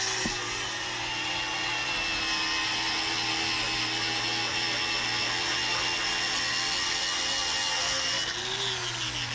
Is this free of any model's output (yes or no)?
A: yes